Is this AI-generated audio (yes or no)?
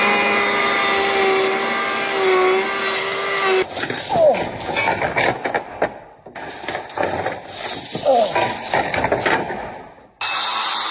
no